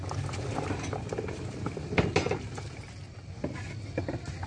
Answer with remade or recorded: recorded